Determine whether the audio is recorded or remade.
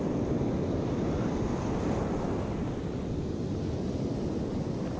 recorded